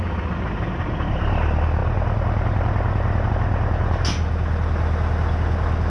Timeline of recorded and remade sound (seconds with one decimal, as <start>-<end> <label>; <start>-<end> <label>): 0.0-5.9 recorded